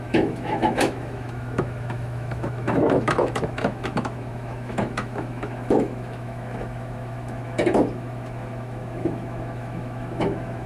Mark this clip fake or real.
fake